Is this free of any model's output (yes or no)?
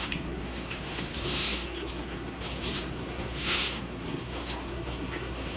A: no